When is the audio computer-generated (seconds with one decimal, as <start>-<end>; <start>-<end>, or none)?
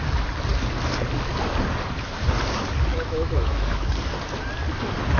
2.9-3.9